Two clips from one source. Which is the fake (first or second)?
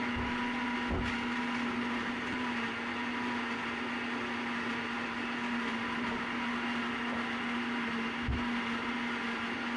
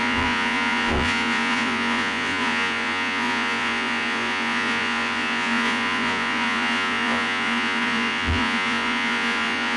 second